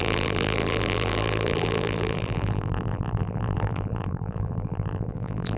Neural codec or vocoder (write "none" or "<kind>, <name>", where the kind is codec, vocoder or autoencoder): vocoder, BigVGAN v2